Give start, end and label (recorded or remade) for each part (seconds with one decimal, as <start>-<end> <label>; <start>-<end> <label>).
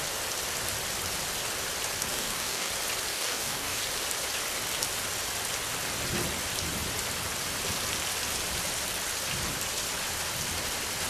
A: 0.0-2.1 recorded; 2.1-2.7 remade; 2.7-3.1 recorded; 3.1-3.8 remade; 3.8-11.1 recorded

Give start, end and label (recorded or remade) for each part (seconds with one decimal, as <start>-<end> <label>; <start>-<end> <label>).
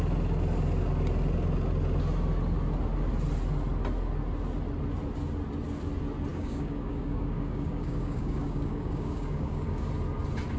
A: 0.0-6.3 recorded; 6.3-9.9 remade; 9.9-10.6 recorded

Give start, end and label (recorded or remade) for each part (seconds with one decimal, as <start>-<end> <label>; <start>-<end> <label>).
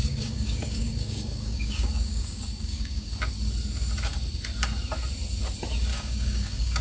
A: 0.0-3.1 remade; 3.1-5.9 recorded; 5.9-6.8 remade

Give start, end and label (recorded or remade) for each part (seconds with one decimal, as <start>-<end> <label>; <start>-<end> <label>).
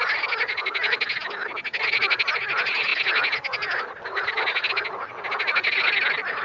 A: 0.0-6.4 recorded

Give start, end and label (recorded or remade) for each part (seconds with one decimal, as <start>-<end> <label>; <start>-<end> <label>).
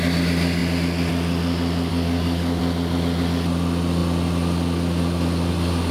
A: 0.0-1.9 recorded; 1.9-2.6 remade; 2.6-5.9 recorded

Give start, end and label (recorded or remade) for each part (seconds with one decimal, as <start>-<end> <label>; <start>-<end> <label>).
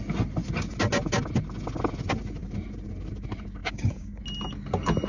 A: 0.0-3.6 recorded; 3.6-4.2 remade; 4.2-5.1 recorded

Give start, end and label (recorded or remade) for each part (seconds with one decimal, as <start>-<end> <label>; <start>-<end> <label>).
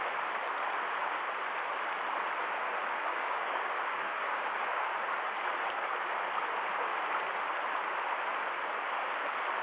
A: 0.0-2.9 recorded; 2.9-5.0 remade; 5.0-9.6 recorded